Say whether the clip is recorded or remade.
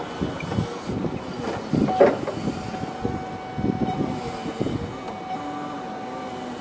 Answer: recorded